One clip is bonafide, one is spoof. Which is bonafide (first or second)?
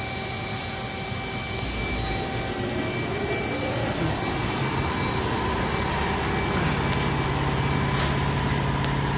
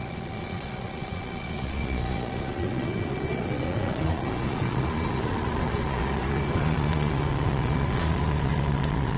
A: first